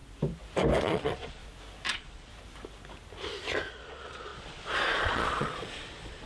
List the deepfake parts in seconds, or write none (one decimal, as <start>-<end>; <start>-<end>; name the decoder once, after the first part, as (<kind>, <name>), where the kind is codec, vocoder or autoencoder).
0.8-1.4 (vocoder, Vocos); 1.9-2.3; 3.7-6.3